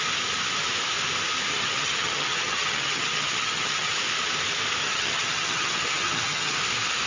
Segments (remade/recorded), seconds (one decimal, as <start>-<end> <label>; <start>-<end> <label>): 0.0-1.5 recorded; 1.5-3.9 remade; 3.9-4.8 recorded; 4.8-6.6 remade; 6.6-7.1 recorded